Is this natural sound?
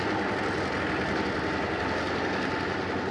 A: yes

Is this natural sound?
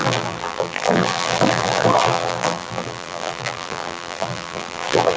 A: no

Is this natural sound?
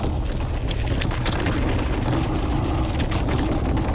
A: yes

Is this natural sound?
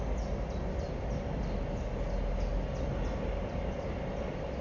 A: yes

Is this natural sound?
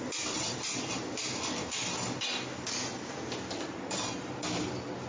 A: yes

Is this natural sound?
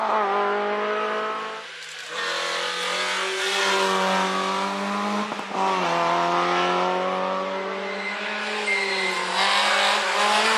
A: yes